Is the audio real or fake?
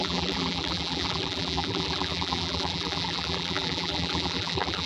fake